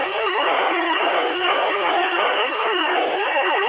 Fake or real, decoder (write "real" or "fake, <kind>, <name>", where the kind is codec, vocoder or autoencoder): fake, codec, SNAC